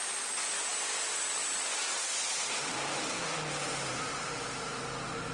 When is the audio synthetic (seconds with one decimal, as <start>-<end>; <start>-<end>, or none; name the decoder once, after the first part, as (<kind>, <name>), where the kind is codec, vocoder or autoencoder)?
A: none